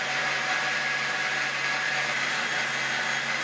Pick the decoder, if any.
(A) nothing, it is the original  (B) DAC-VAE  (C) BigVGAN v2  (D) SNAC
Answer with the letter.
A